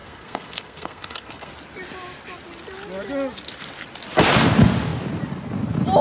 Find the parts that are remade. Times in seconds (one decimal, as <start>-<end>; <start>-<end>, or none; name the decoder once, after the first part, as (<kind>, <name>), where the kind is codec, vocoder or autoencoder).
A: 0.0-1.5 (codec, SNAC)